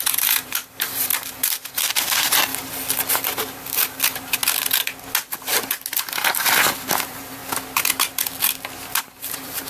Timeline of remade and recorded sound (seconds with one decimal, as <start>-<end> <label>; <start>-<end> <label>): 0.0-2.5 remade; 2.5-3.1 recorded; 3.1-4.4 remade; 4.4-6.0 recorded; 6.0-7.4 remade; 7.4-9.0 recorded; 9.0-9.7 remade